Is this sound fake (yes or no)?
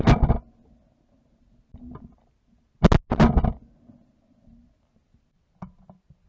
no